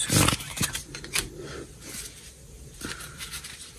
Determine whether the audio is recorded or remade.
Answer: recorded